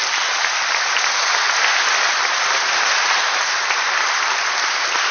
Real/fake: real